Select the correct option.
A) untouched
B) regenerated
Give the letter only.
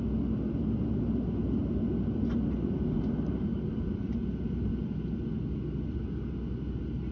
A